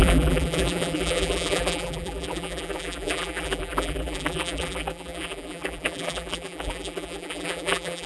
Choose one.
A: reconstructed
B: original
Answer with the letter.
A